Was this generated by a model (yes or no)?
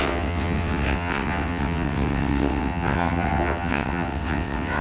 yes